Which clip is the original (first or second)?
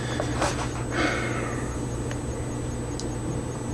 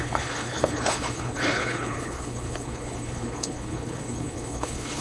first